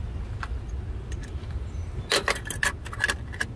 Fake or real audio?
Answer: real